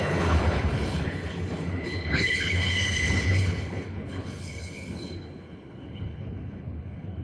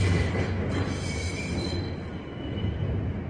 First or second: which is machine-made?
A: first